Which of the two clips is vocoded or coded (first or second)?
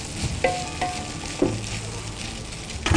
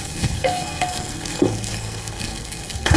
second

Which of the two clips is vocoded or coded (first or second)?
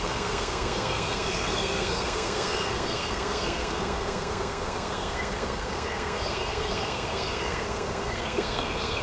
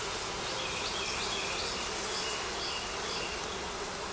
first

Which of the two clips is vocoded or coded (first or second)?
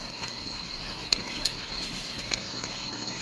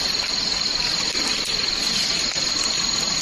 first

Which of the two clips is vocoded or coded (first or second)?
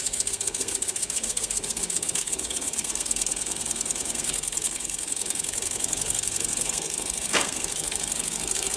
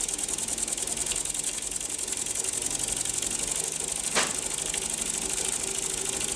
first